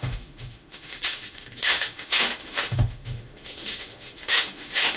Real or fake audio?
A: fake